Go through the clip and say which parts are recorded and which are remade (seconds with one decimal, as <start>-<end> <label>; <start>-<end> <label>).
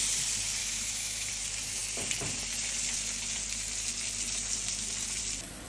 0.0-0.6 recorded; 0.6-1.3 remade; 1.3-5.7 recorded